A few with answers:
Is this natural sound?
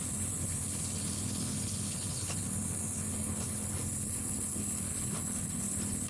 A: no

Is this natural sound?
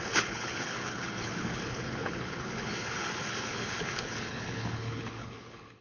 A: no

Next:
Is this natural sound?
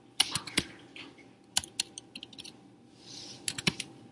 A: yes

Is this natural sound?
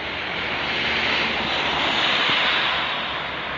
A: yes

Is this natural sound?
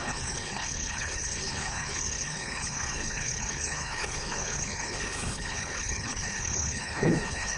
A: no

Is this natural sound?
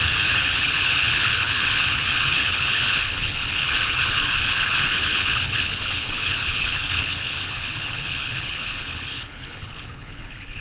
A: no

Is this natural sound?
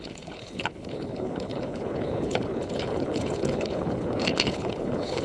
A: no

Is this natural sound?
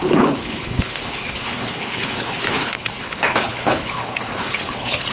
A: no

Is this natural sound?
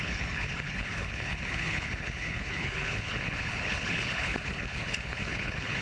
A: no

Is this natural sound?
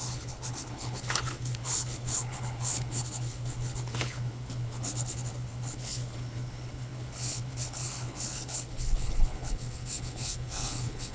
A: no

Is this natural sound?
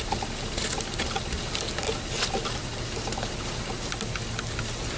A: yes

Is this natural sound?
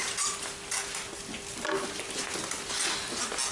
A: yes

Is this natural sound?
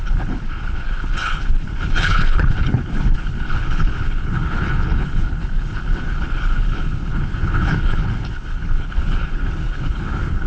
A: no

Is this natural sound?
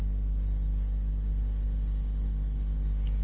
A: no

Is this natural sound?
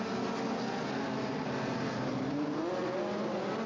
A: yes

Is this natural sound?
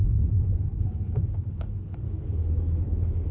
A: no